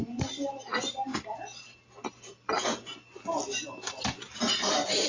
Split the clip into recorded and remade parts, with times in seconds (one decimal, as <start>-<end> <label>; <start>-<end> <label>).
0.0-2.9 remade; 2.9-5.1 recorded